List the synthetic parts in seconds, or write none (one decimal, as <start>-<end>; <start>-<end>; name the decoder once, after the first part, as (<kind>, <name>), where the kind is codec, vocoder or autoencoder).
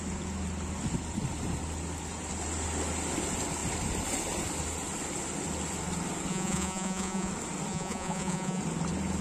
6.3-7.3 (vocoder, Vocos); 7.7-8.6